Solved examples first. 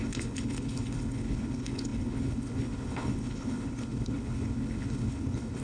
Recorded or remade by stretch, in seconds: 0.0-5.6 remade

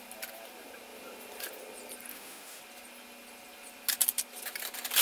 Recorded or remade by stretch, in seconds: 0.0-2.1 recorded; 2.1-2.6 remade; 2.6-5.0 recorded

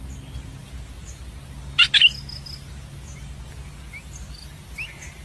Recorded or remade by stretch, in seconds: 0.0-5.2 recorded

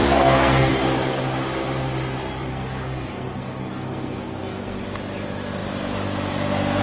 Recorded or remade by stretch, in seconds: 0.0-0.7 remade; 0.7-2.5 recorded; 2.5-4.8 remade; 4.8-6.8 recorded

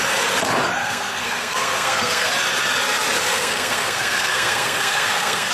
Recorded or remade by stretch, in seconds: 0.0-0.8 recorded; 0.8-2.3 remade; 2.3-3.2 recorded; 3.2-5.5 remade

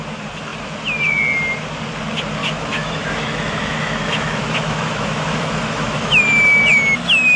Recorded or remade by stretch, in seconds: 0.0-2.4 recorded; 2.4-6.2 remade; 6.2-7.4 recorded

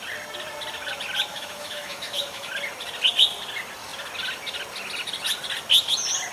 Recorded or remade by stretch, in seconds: 0.0-1.3 recorded; 1.3-2.5 remade; 2.5-6.3 recorded

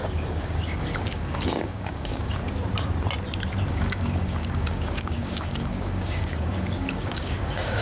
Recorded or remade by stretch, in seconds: 0.0-2.4 remade; 2.4-3.7 recorded; 3.7-7.8 remade